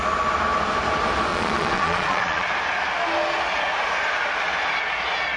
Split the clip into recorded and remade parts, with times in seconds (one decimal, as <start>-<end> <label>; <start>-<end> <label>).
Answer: 0.0-1.3 recorded; 1.3-2.5 remade; 2.5-5.4 recorded